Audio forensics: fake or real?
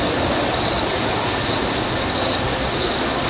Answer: real